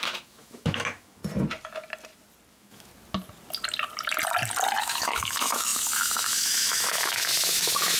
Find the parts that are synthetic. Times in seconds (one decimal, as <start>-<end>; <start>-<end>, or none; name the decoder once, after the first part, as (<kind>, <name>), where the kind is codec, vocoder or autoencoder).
0.0-1.2 (autoencoder, DAC-VAE); 2.5-2.9; 4.8-8.0